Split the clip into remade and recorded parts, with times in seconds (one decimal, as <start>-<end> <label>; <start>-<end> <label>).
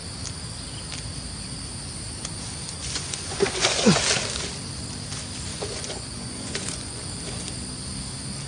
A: 0.0-2.8 recorded; 2.8-4.0 remade; 4.0-5.5 recorded; 5.5-7.0 remade; 7.0-8.5 recorded